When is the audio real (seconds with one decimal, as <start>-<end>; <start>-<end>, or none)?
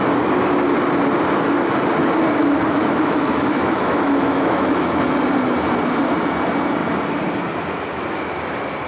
0.0-2.4; 5.0-8.9